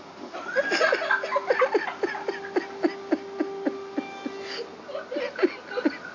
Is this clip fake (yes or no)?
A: no